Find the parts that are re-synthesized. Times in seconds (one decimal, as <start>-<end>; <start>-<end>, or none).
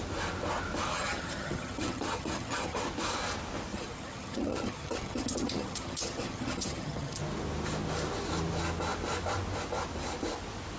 0.9-2.8; 3.7-7.2